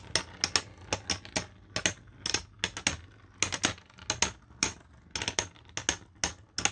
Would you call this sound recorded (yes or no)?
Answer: yes